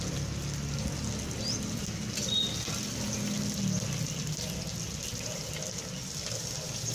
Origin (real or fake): real